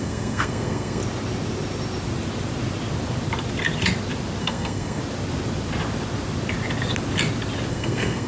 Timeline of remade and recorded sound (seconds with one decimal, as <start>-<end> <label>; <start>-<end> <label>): 0.0-1.0 remade; 1.0-4.4 recorded; 4.4-5.0 remade; 5.0-7.7 recorded; 7.7-8.3 remade